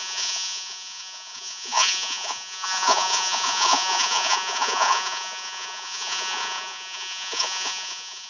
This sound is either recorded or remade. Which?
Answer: remade